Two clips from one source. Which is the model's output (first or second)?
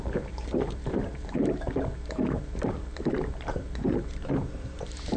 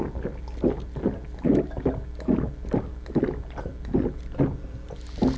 first